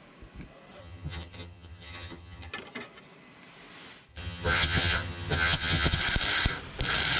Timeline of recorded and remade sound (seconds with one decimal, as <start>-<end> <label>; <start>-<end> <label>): 0.0-0.8 recorded; 0.8-2.5 remade; 2.5-4.1 recorded; 4.1-6.0 remade; 6.0-7.2 recorded